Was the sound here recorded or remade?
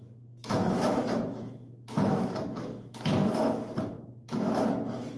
remade